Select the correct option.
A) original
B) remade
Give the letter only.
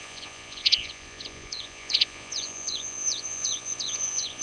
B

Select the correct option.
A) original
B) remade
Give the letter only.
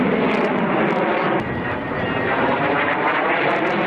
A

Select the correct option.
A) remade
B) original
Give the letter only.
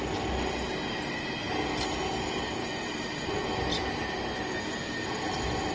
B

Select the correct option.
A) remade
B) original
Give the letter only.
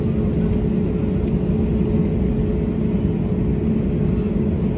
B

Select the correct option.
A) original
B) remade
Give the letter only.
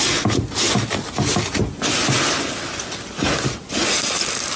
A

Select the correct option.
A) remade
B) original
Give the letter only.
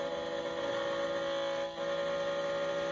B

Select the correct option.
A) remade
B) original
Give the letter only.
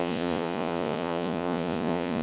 A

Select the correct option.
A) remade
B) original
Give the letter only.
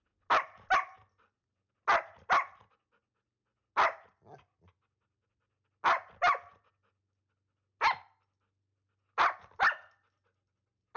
B